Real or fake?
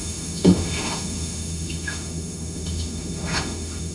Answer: fake